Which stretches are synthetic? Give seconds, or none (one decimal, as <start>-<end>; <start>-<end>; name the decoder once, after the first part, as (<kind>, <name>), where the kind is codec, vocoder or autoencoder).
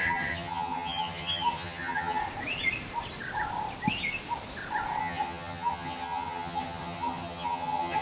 0.0-2.2 (vocoder, HiFi-GAN); 5.0-8.0